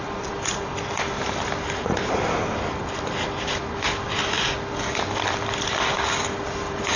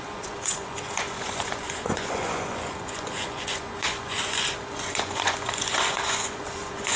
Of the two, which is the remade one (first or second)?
second